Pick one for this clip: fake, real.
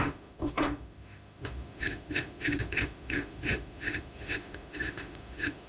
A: fake